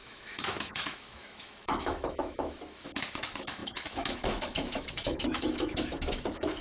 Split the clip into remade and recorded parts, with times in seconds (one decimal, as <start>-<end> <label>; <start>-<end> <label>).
0.0-6.6 remade